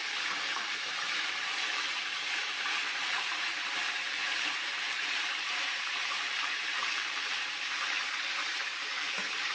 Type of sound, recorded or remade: remade